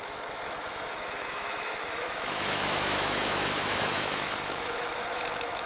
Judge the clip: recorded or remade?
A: remade